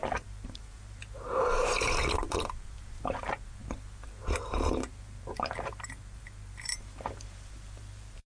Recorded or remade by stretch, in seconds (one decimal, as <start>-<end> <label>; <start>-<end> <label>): 0.0-8.4 remade